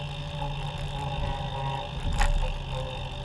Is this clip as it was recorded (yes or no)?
yes